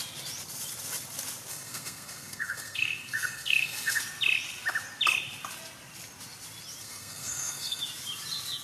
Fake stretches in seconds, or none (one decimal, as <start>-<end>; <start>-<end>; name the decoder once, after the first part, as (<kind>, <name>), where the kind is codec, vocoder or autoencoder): 1.5-4.0 (codec, SNAC); 6.8-7.8